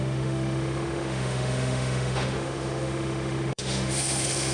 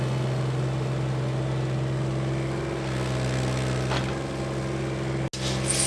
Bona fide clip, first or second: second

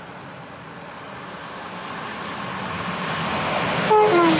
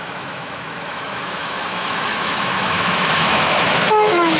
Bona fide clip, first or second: first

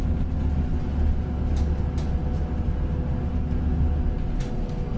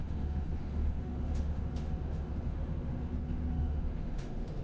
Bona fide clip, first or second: first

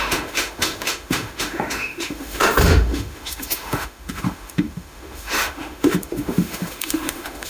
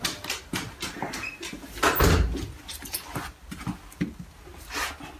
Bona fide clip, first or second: second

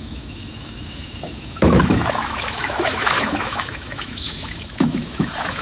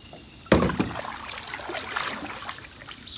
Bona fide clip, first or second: second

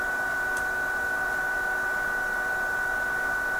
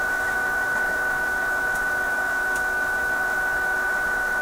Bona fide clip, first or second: first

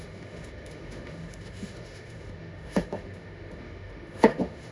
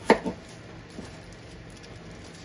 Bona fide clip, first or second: second